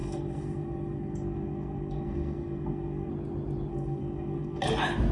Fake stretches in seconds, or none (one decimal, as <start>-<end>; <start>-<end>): 0.0-3.1; 3.7-4.6